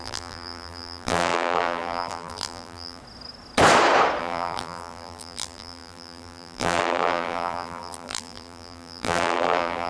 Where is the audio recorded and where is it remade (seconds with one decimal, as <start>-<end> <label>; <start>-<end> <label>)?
0.0-3.0 remade; 3.0-4.2 recorded; 4.2-9.9 remade